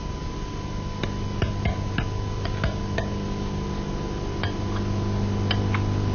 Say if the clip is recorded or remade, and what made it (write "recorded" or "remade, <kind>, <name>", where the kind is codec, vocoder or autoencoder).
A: recorded